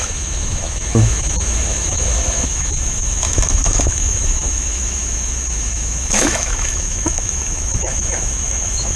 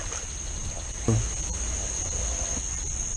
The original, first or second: second